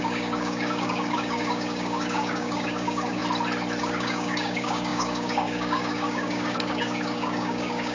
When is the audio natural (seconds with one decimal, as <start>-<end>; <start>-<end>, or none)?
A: 3.2-3.8